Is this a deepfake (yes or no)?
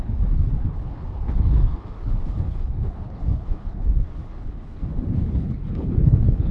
yes